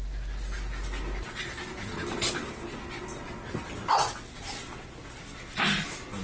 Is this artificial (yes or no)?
no